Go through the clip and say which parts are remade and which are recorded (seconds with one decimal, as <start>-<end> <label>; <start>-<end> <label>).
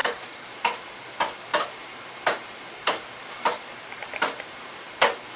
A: 0.0-1.0 remade; 1.0-1.5 recorded; 1.5-4.7 remade; 4.7-5.4 recorded